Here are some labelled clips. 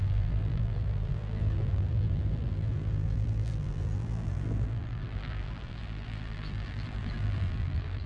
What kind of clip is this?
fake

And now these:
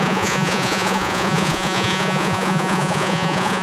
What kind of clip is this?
fake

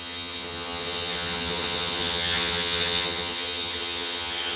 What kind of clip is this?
fake